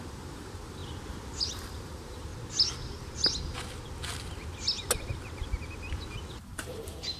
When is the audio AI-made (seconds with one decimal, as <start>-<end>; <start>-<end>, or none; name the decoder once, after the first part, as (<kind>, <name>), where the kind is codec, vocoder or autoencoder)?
0.0-0.8 (vocoder, BigVGAN v2); 1.4-2.3; 6.3-7.2